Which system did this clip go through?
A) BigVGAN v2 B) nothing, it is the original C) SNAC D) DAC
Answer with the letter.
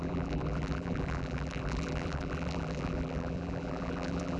A